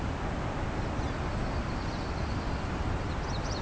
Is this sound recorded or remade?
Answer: recorded